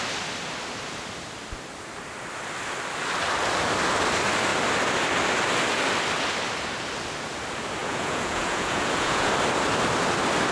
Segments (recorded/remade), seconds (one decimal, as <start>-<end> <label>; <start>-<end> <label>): 0.0-7.8 recorded; 7.8-9.3 remade; 9.3-10.5 recorded